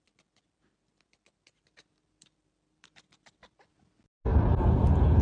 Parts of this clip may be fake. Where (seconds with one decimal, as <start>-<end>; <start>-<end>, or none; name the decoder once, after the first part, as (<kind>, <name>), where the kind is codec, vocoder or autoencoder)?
none